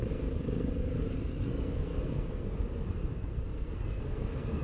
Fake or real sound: fake